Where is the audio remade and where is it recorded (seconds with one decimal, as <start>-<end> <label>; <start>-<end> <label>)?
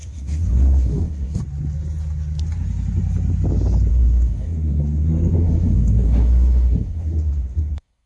0.0-1.4 remade; 1.4-3.9 recorded; 3.9-8.1 remade